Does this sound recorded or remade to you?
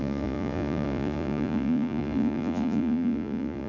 remade